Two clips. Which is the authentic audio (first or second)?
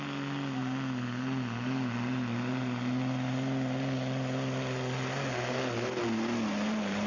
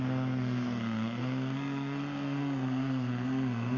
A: first